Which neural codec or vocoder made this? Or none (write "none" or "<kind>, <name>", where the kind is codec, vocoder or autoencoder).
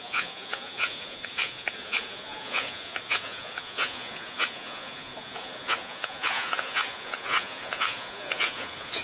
vocoder, Vocos